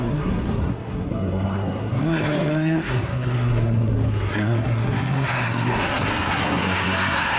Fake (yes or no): yes